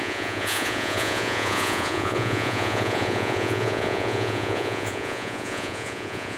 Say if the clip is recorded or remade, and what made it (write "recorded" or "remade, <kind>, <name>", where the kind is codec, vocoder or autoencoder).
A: remade, vocoder, Vocos